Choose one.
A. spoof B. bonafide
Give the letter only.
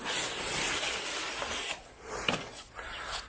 B